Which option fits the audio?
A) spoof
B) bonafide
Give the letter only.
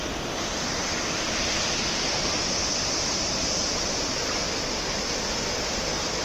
B